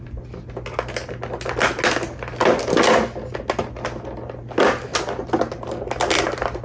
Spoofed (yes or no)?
no